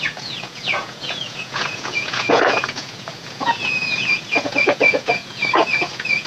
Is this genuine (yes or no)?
no